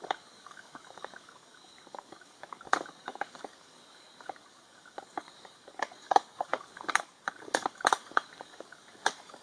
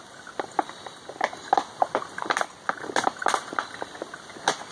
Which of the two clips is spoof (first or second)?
first